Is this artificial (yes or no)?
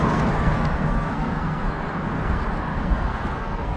yes